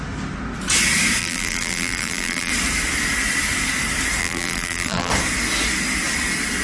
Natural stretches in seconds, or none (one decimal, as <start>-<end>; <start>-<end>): 0.0-1.2; 2.5-4.2; 5.1-6.6